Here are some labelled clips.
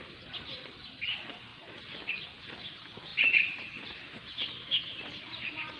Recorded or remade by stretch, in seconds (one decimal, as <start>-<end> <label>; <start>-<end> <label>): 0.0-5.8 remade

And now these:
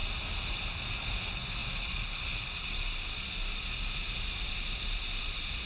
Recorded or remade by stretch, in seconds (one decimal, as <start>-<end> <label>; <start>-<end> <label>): 0.0-5.7 recorded

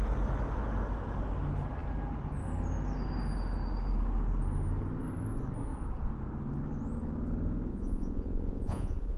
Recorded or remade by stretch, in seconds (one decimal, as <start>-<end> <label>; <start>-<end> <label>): 0.0-7.7 recorded; 7.7-9.2 remade

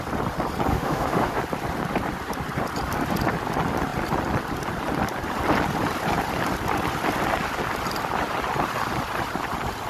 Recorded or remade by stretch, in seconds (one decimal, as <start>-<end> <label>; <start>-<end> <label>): 0.0-0.7 recorded; 0.7-1.4 remade; 1.4-9.9 recorded